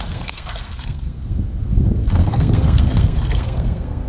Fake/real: fake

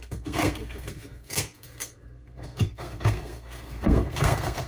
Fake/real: fake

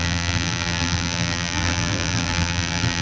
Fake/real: fake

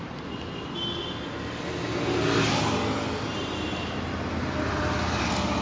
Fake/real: real